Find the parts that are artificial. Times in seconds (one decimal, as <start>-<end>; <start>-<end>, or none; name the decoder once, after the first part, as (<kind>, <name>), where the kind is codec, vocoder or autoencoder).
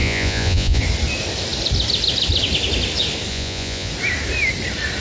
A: 0.0-0.8 (vocoder, Vocos); 3.3-3.9